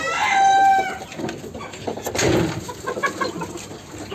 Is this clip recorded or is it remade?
recorded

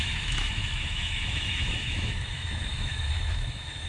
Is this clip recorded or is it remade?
remade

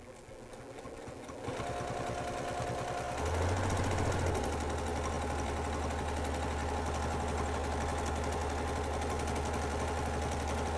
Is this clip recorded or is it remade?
recorded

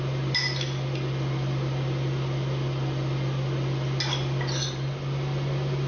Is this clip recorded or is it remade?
recorded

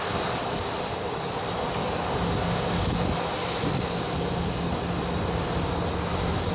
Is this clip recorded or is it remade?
recorded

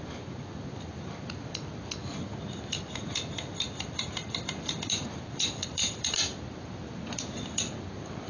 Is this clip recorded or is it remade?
recorded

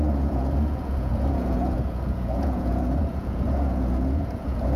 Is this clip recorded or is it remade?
remade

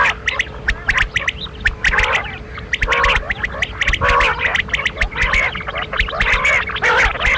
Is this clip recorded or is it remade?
recorded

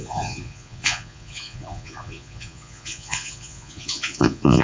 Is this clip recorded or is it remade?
remade